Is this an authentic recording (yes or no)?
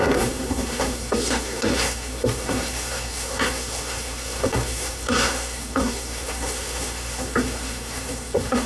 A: no